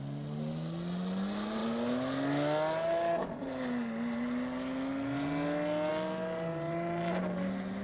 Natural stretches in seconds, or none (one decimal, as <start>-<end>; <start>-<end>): 0.0-7.8